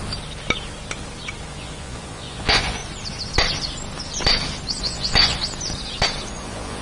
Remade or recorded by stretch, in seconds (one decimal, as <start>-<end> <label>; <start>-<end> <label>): 0.0-1.5 recorded; 1.5-2.8 remade; 2.8-4.8 recorded; 4.8-5.4 remade; 5.4-6.3 recorded; 6.3-6.8 remade